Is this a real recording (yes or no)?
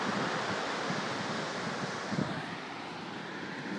yes